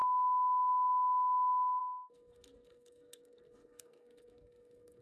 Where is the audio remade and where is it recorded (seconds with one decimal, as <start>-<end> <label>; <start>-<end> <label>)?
0.0-1.8 recorded; 1.8-5.0 remade